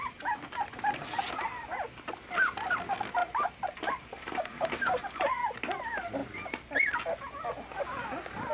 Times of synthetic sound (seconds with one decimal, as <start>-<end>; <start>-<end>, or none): none